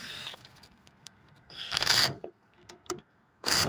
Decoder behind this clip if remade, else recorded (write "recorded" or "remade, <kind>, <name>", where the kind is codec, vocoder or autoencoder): remade, codec, SNAC